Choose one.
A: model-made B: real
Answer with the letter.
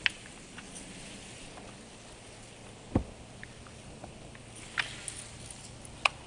B